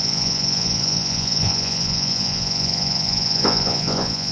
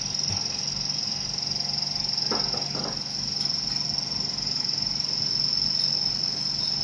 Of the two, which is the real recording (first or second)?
second